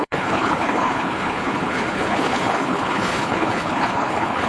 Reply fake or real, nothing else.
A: fake